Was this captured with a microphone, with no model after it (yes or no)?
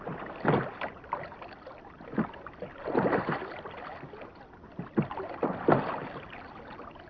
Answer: yes